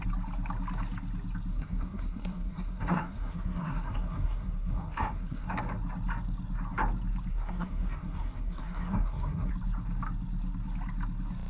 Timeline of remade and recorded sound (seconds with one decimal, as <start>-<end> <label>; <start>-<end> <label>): 0.0-1.5 recorded; 1.5-5.6 remade; 5.6-7.3 recorded; 7.3-9.5 remade; 9.5-11.5 recorded